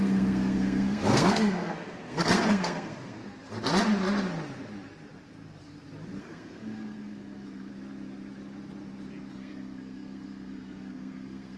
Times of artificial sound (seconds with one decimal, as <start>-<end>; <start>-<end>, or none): 0.0-3.2; 6.2-7.7; 9.3-11.6